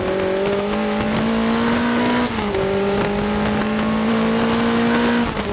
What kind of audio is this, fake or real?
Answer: real